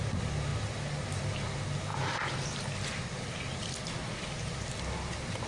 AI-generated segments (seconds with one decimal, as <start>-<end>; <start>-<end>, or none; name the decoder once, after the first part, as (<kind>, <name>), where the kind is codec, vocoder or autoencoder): none

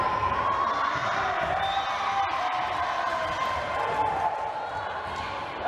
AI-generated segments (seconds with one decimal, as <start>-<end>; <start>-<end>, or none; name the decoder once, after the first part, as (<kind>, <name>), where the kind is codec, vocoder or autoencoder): none

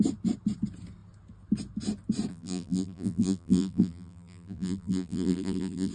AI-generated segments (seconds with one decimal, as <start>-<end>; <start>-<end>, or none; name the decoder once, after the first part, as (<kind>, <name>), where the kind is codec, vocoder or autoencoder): 2.3-5.9 (vocoder, BigVGAN v2)

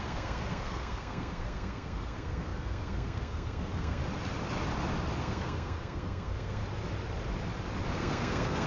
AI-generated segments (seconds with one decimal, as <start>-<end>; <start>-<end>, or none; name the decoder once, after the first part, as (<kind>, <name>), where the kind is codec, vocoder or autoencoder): 0.0-4.0 (codec, SNAC); 5.2-6.6; 7.9-8.7

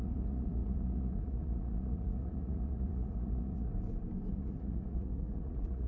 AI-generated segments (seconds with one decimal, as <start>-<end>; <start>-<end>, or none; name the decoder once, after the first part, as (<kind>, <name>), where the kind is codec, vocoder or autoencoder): 0.0-3.7 (vocoder, Vocos); 4.3-5.9